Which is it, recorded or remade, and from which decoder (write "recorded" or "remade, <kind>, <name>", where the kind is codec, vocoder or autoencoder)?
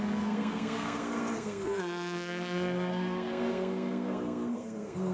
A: remade, codec, SNAC